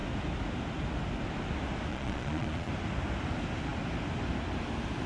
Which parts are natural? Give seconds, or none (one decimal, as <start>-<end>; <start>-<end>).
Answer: 0.0-1.9; 2.7-5.1